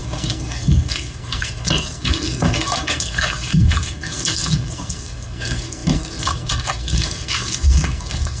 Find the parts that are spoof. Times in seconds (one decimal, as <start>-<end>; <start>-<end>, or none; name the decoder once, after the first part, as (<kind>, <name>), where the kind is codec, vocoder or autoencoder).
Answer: 0.0-8.4 (codec, SNAC)